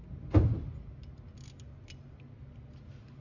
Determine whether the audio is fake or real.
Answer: real